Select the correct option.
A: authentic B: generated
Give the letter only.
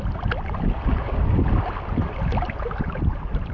A